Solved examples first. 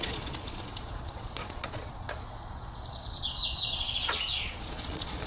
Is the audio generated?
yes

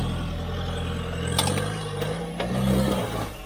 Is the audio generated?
no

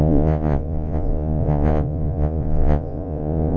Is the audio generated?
yes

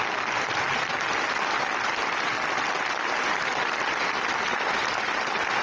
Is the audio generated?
no